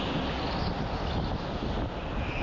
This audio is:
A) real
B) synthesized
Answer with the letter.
A